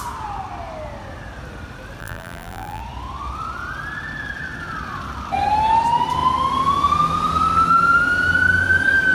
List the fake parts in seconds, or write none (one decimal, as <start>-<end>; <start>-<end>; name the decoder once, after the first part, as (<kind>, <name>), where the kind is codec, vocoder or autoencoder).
2.0-2.8 (vocoder, BigVGAN v2)